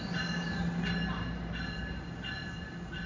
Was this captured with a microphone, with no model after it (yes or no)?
yes